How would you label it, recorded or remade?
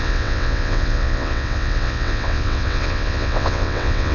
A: remade